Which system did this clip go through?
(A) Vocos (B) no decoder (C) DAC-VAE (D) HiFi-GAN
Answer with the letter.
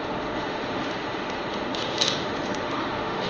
C